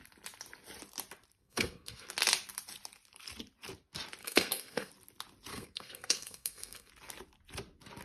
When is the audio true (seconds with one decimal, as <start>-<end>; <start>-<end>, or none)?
0.0-1.4; 2.1-4.2; 4.9-5.5; 6.9-8.0